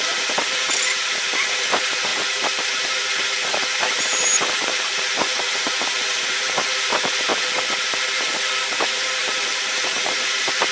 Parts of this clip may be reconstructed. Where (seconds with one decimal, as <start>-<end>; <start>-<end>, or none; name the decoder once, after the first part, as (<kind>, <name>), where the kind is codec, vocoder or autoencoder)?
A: 0.0-7.3 (vocoder, BigVGAN v2); 9.0-10.7